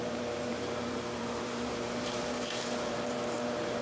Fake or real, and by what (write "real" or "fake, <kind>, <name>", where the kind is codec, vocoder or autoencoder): fake, vocoder, BigVGAN v2